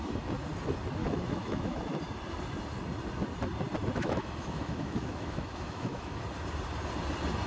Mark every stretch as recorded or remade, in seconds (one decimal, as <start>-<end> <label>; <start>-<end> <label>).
0.0-1.0 recorded; 1.0-1.8 remade; 1.8-3.9 recorded; 3.9-6.2 remade; 6.2-7.5 recorded